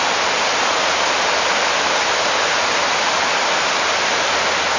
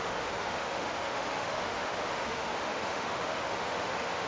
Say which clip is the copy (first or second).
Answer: second